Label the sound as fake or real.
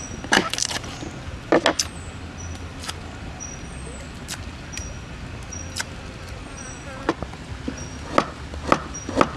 real